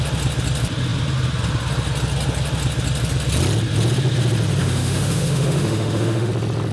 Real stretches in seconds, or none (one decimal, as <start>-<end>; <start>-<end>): 0.0-4.6; 6.3-6.7